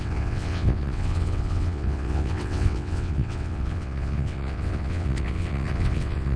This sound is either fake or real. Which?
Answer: fake